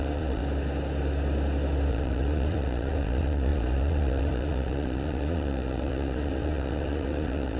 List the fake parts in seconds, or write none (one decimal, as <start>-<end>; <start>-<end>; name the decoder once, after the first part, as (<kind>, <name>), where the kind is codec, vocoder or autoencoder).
0.0-0.4 (vocoder, Vocos); 1.9-7.6